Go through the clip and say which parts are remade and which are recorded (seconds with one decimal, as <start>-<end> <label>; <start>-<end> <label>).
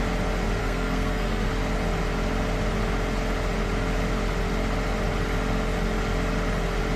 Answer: 0.0-0.6 recorded; 0.6-1.5 remade; 1.5-7.0 recorded